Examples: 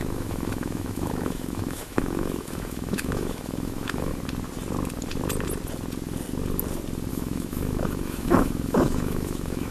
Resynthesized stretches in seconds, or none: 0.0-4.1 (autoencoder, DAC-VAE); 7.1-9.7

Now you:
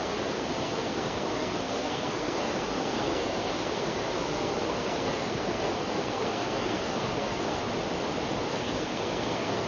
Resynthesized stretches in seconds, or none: 0.0-7.6 (codec, SNAC); 8.5-9.7

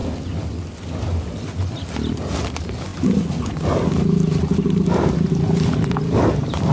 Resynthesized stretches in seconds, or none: 2.1-6.7 (vocoder, BigVGAN v2)